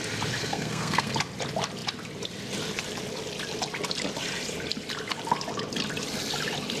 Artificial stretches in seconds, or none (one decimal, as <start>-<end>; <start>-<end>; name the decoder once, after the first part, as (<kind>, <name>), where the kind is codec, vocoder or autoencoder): 0.4-1.1 (codec, SNAC)